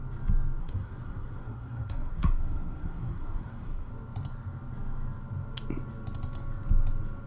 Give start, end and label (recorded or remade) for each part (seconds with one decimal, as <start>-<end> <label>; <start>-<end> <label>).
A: 0.0-0.6 recorded; 0.6-3.9 remade; 3.9-7.3 recorded